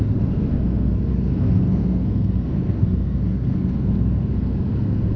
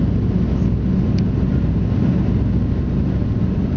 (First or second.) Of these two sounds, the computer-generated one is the first